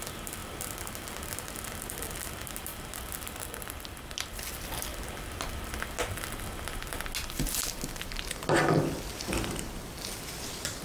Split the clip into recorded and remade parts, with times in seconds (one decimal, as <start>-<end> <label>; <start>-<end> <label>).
0.0-10.8 recorded